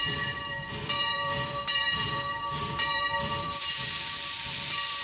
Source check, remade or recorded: remade